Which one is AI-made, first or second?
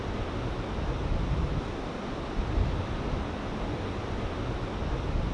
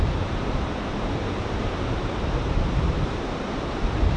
second